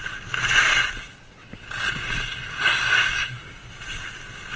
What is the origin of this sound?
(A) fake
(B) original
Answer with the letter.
B